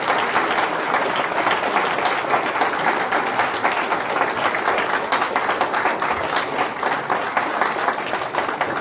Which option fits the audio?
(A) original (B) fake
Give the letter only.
A